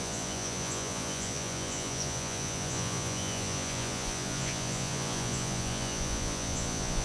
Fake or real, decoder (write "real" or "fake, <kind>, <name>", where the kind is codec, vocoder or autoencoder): fake, vocoder, Vocos